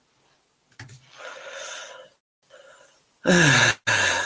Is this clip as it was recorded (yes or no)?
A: yes